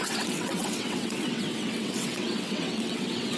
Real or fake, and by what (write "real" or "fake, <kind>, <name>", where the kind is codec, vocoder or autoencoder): fake, vocoder, WaveNeXt